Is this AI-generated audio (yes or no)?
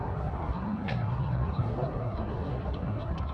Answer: yes